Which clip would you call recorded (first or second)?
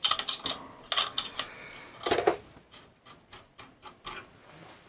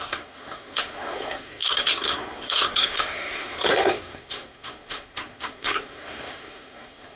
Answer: first